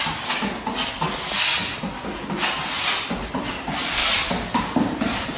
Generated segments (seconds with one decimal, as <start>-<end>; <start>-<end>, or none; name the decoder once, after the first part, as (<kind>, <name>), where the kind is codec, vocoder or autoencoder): none